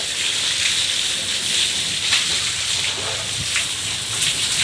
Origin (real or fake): real